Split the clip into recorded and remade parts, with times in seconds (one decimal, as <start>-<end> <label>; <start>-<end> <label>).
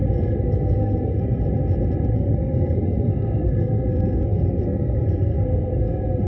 0.0-1.4 remade; 1.4-2.1 recorded; 2.1-6.3 remade